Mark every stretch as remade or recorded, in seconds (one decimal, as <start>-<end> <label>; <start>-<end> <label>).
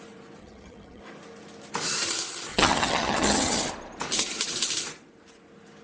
0.0-0.4 recorded; 0.4-1.0 remade; 1.0-2.5 recorded; 2.5-3.7 remade; 3.7-5.8 recorded